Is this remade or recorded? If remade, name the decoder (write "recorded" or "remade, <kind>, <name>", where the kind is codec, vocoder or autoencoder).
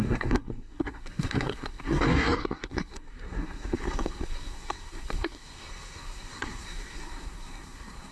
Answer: remade, codec, SNAC